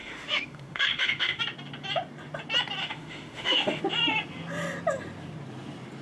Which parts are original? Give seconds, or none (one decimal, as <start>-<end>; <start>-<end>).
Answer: 1.4-2.8; 3.8-6.0